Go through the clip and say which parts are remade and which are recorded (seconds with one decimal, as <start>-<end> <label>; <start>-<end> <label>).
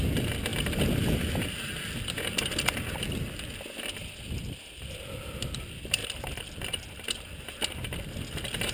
0.0-8.7 recorded